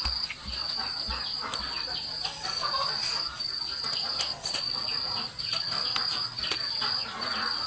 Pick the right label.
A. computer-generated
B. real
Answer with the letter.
B